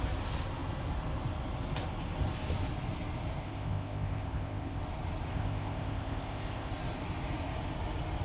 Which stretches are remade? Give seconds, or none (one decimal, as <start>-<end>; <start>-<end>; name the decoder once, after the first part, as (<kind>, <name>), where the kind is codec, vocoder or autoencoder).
3.4-4.8 (codec, ZipCodec); 5.3-6.7